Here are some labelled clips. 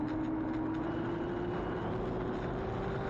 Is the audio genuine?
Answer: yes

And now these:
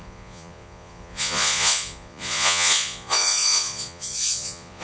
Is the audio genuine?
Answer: no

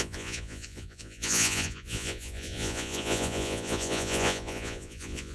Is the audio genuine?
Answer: no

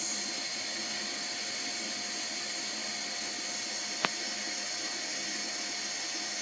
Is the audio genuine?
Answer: yes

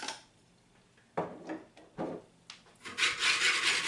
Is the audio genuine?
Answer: yes